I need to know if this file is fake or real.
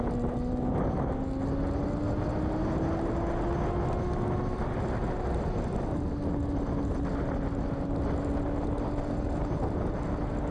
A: real